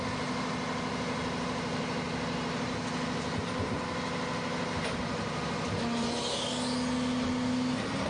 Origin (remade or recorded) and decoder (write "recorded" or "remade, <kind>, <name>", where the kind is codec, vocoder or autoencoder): recorded